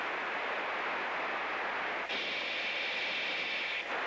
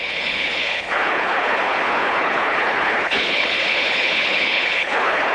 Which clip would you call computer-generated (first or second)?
second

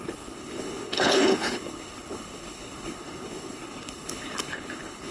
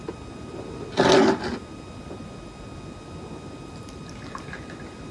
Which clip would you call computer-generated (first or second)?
first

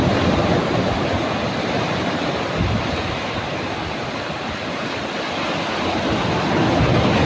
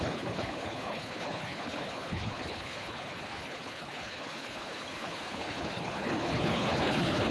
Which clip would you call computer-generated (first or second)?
second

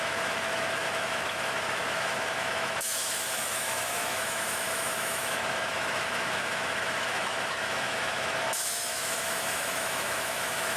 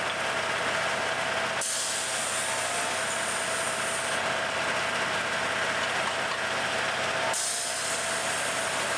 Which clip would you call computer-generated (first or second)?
first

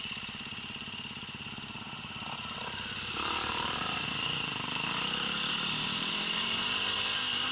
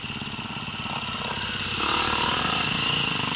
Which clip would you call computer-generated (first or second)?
first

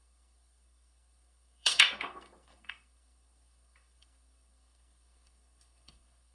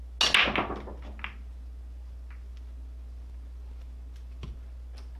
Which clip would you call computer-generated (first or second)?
first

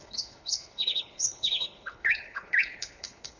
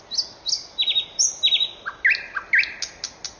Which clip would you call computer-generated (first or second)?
first